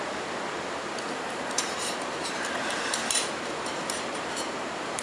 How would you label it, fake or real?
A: fake